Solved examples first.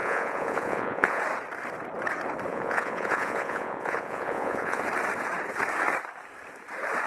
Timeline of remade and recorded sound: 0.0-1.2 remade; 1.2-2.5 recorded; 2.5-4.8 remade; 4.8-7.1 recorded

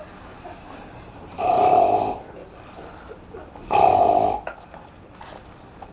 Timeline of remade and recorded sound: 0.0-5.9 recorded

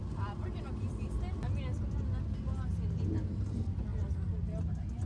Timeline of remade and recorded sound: 0.0-5.1 recorded